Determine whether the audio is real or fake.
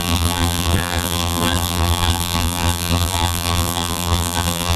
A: fake